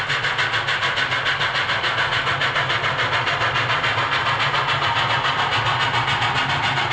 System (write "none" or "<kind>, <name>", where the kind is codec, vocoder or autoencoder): none